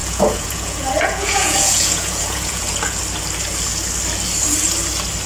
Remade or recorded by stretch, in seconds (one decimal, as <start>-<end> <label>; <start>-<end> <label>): 0.0-3.0 remade; 3.0-5.3 recorded